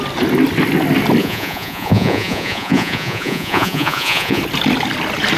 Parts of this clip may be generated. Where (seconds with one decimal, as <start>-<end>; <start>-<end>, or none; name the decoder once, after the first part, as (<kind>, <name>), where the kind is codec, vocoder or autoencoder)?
1.2-4.4 (vocoder, Vocos)